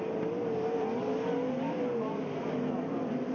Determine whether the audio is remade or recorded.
recorded